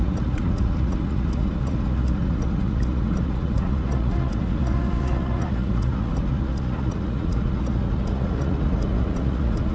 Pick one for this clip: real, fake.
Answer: fake